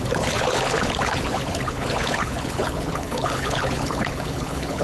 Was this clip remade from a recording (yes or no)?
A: yes